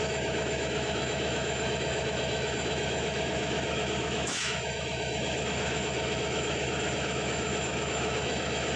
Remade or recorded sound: remade